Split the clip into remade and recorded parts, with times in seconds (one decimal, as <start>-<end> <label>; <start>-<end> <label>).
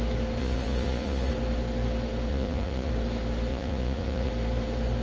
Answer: 0.0-0.4 recorded; 0.4-1.3 remade; 1.3-2.3 recorded; 2.3-2.9 remade; 2.9-3.5 recorded; 3.5-4.3 remade; 4.3-5.0 recorded